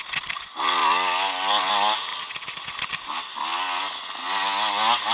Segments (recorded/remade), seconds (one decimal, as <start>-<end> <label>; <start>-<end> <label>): 0.0-5.1 recorded